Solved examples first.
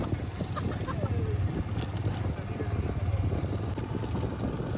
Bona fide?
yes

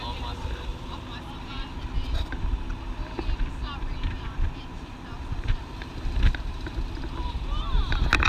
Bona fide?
no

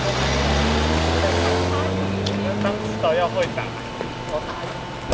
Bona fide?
yes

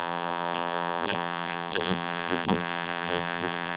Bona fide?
no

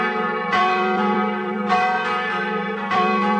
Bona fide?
no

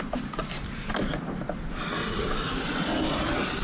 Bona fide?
yes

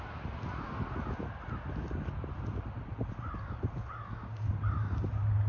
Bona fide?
yes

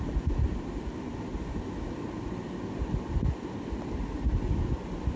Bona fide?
yes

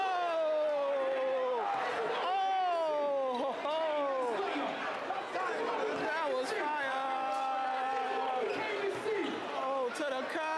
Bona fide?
yes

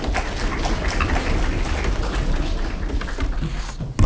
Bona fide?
yes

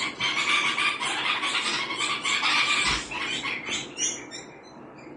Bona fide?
yes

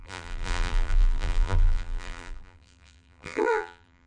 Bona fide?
no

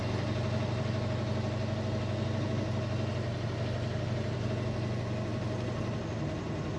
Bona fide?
yes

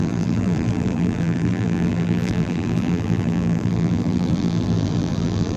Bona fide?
no